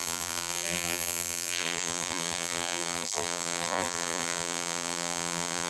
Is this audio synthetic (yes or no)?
yes